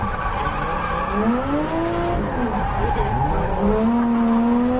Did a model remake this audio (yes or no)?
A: no